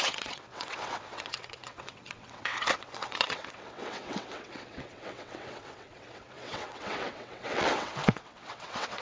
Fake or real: fake